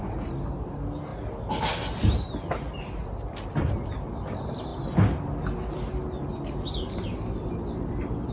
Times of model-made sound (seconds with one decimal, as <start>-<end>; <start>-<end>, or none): none